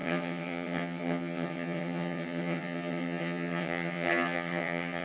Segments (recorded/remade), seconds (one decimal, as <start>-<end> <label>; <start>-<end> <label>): 0.0-5.0 remade